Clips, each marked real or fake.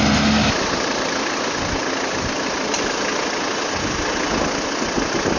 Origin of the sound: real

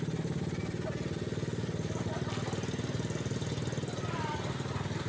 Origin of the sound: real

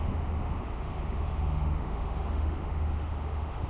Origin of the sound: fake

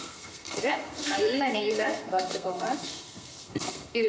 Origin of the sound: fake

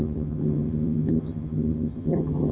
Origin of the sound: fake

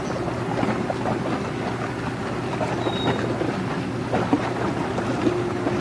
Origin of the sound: real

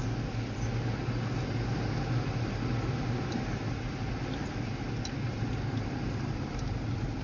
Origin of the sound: real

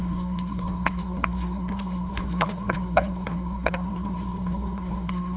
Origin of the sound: fake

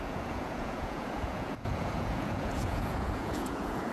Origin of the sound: fake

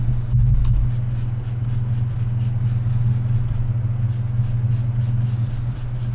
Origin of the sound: real